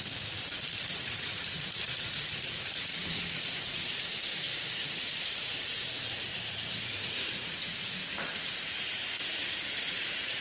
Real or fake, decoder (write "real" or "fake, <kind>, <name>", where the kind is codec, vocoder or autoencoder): fake, vocoder, Vocos